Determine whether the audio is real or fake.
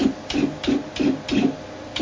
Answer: real